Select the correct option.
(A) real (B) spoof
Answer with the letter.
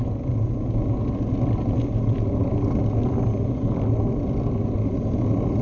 A